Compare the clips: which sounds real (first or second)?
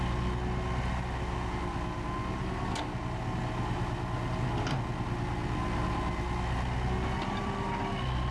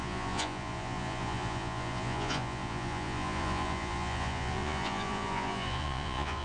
first